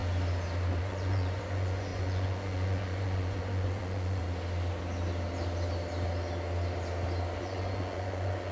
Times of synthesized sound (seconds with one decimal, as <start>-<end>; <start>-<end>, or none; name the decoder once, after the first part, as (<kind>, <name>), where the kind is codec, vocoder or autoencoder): 0.8-4.2 (vocoder, Vocos); 7.4-8.5